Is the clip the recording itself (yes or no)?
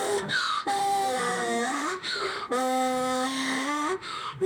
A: no